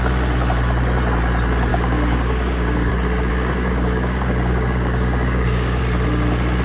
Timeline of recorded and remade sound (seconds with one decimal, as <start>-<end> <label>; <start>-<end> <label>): 0.0-1.7 recorded; 1.7-2.9 remade; 2.9-3.3 recorded; 3.3-5.8 remade; 5.8-6.6 recorded